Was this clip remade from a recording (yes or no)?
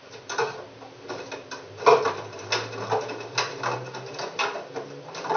no